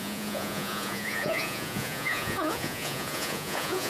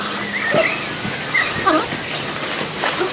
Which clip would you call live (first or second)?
second